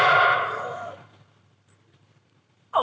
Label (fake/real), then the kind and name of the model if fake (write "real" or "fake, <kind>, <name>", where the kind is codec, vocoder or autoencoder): fake, vocoder, BigVGAN v2